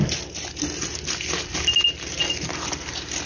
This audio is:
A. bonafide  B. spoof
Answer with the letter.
A